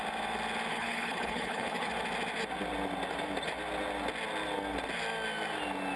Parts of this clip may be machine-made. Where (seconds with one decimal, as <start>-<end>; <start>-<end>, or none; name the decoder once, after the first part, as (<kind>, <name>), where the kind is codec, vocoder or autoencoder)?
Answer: 0.7-1.9 (codec, HILCodec)